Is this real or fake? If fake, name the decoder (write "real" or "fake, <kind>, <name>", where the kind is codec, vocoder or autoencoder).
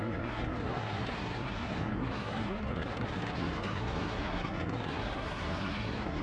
fake, codec, SNAC